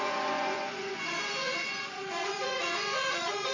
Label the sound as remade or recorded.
remade